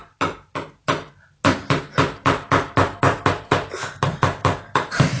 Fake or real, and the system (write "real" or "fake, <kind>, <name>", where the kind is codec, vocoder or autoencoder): real